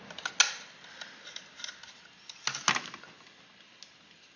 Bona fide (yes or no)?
yes